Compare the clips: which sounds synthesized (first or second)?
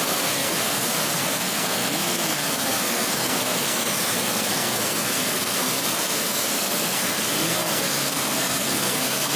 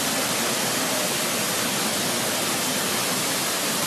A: first